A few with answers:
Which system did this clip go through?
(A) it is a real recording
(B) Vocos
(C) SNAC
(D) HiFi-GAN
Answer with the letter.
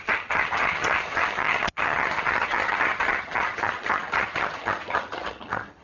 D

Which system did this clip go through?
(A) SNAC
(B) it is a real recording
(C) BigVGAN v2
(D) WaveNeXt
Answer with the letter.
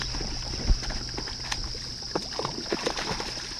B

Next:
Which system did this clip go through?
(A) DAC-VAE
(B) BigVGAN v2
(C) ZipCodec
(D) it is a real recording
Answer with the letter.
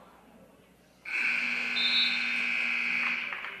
D